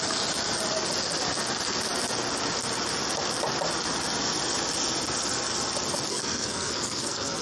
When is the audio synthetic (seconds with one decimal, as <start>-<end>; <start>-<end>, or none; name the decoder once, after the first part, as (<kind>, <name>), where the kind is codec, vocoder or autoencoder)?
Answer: 6.1-7.4 (codec, SNAC)